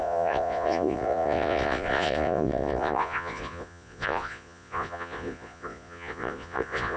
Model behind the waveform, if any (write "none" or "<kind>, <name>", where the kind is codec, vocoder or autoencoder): vocoder, Vocos